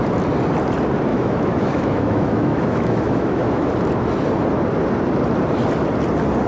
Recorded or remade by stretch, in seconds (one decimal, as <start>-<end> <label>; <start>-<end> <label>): 0.0-1.1 recorded; 1.1-3.7 remade; 3.7-6.5 recorded